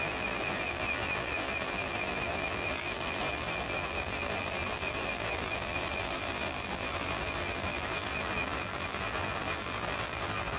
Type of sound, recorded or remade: remade